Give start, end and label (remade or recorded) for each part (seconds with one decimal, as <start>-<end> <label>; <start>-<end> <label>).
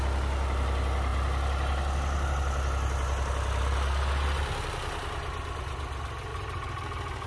0.0-6.3 recorded; 6.3-7.3 remade